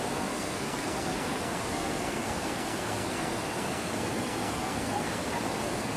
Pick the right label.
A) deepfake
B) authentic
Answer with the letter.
A